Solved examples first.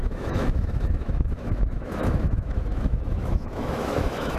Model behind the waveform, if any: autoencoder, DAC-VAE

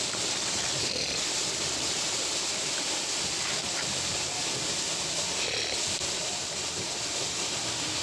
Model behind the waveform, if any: none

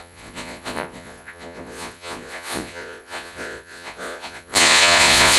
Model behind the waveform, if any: vocoder, Vocos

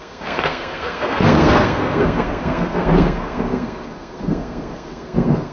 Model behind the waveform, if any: codec, SNAC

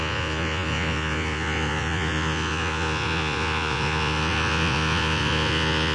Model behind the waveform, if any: vocoder, Vocos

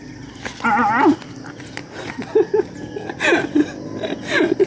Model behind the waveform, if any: none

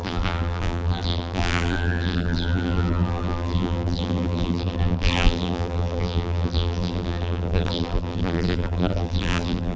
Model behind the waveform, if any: vocoder, BigVGAN v2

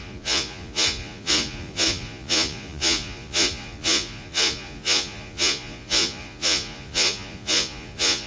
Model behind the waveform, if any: vocoder, Vocos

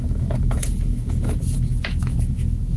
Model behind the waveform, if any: autoencoder, DAC-VAE